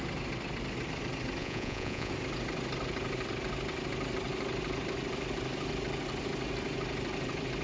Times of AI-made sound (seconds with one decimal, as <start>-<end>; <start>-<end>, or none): 1.4-2.1